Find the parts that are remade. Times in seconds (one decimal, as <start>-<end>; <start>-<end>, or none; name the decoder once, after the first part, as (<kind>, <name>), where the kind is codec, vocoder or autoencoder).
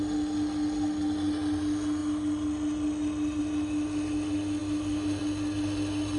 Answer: none